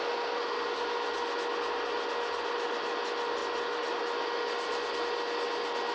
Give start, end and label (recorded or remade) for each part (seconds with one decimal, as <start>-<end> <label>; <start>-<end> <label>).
0.0-5.9 recorded